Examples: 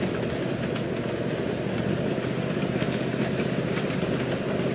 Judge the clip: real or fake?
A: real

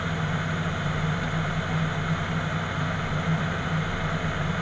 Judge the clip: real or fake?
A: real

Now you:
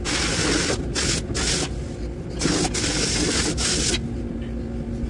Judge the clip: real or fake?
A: real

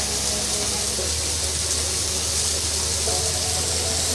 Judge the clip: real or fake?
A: real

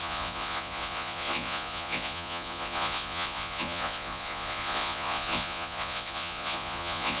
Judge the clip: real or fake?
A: fake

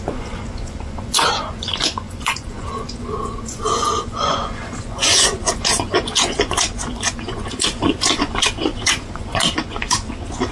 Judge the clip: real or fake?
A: fake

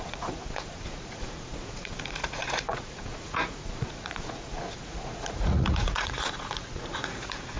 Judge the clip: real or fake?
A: fake